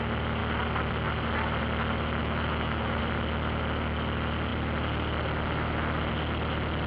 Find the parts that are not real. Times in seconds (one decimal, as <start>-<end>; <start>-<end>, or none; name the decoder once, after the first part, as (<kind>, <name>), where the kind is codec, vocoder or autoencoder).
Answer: 2.2-3.0 (autoencoder, DAC-VAE)